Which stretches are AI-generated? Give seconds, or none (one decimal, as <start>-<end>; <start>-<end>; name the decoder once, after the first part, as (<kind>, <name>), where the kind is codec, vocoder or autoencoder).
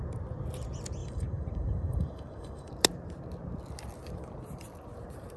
1.0-2.7 (vocoder, BigVGAN v2)